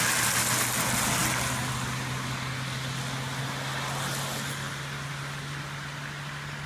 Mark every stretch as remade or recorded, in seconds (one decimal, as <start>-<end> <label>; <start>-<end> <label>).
0.0-6.7 recorded